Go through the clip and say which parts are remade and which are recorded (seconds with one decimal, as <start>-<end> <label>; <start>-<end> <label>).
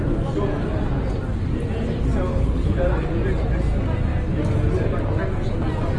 0.0-2.3 recorded; 2.3-2.8 remade; 2.8-6.0 recorded